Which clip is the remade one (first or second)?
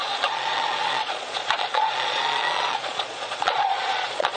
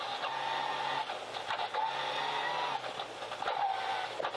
first